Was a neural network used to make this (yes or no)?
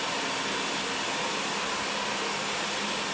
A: no